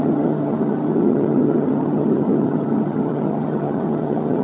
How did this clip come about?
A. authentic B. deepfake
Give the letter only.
B